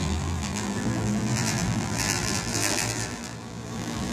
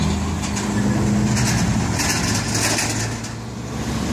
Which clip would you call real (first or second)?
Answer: second